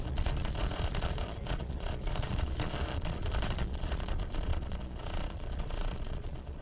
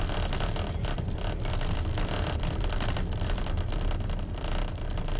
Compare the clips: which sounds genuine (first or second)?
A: second